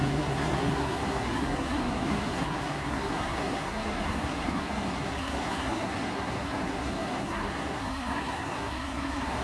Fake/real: fake